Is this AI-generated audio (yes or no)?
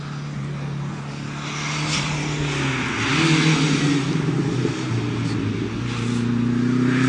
no